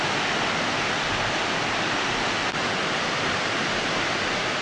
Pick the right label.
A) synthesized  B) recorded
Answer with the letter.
B